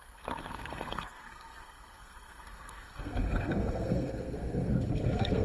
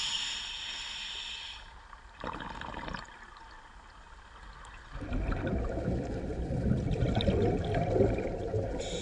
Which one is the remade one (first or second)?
first